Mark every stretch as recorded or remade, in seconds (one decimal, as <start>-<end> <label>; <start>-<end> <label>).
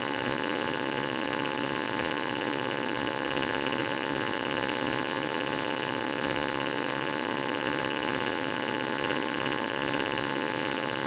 0.0-11.1 remade